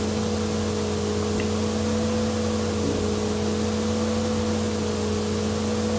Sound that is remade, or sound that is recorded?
recorded